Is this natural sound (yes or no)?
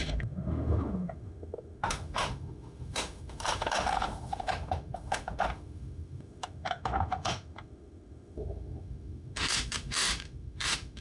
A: no